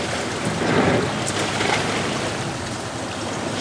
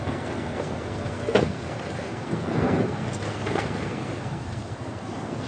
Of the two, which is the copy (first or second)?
second